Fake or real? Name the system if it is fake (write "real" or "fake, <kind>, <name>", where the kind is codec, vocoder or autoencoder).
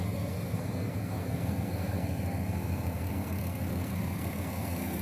fake, codec, SNAC